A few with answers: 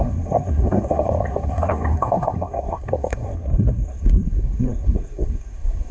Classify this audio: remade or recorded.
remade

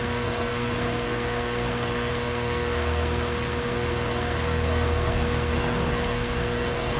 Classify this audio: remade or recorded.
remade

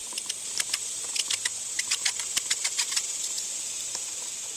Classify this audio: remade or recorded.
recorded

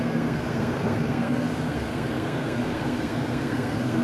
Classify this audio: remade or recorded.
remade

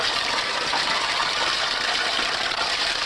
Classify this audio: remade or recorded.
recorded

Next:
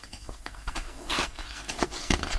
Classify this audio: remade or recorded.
remade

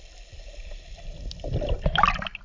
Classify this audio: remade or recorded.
recorded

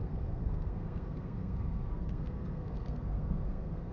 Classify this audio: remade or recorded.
remade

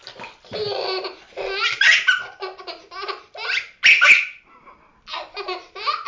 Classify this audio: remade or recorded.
recorded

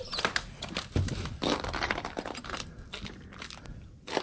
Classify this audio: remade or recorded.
recorded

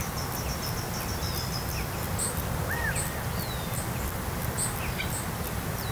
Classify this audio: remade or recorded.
recorded